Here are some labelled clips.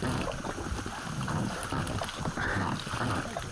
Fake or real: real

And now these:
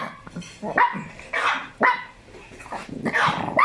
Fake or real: real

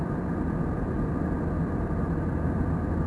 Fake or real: real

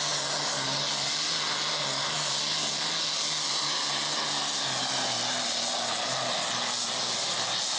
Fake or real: real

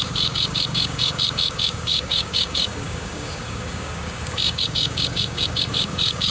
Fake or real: fake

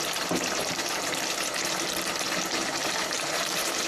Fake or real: fake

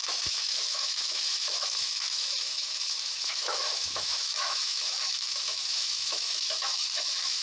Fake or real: fake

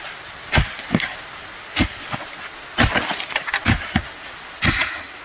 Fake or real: real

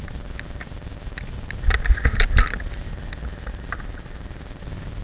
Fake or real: real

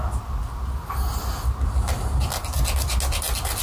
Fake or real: real